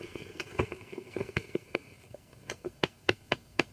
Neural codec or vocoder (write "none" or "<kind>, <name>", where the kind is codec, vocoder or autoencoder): codec, SNAC